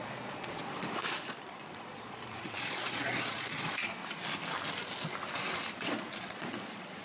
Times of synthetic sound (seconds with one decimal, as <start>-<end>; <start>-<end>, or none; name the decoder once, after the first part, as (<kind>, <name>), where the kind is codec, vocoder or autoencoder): 0.0-4.0 (vocoder, Vocos); 5.7-7.0